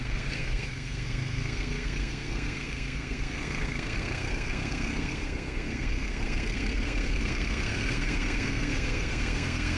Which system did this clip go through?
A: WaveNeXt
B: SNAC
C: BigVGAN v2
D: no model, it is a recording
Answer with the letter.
B